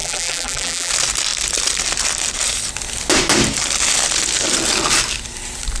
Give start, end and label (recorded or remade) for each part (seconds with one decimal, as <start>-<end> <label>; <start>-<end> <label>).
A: 0.0-0.9 remade; 0.9-5.8 recorded